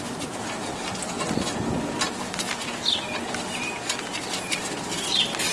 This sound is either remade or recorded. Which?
recorded